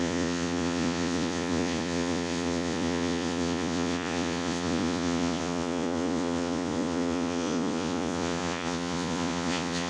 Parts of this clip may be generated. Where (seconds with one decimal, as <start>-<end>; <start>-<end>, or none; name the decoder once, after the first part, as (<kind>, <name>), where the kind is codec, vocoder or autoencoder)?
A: 0.0-9.9 (vocoder, Vocos)